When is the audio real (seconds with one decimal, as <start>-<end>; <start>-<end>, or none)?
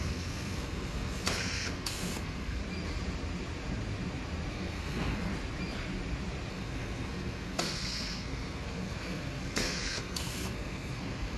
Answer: 2.6-4.5; 5.3-6.5